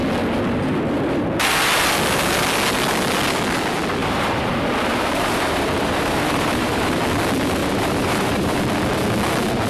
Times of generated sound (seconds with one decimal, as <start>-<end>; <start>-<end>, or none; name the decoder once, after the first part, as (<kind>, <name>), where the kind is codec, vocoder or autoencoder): 4.0-7.0 (vocoder, BigVGAN v2); 7.6-8.6